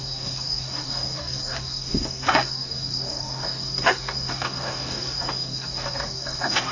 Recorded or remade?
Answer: remade